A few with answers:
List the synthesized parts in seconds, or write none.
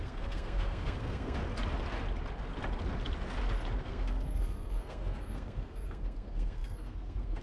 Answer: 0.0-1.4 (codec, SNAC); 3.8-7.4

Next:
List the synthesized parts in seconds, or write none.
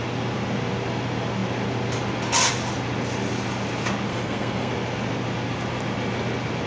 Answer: 4.1-4.7 (codec, SNAC)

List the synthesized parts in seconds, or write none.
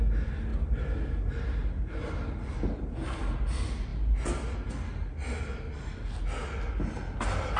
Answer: none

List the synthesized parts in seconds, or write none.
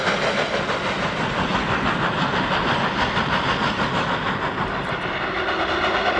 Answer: none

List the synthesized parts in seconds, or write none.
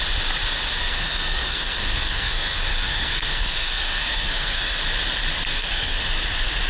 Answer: 0.8-4.8 (codec, SNAC); 5.5-6.0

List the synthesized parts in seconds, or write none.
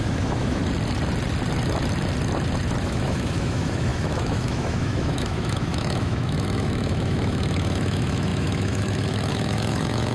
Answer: 0.0-0.6 (autoencoder, DAC-VAE); 2.8-10.1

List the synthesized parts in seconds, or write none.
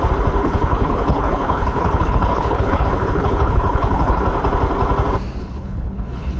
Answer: 0.4-4.2 (codec, HILCodec); 5.4-6.4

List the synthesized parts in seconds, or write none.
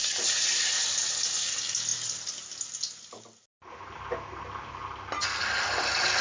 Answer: none